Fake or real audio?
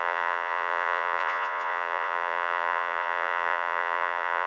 fake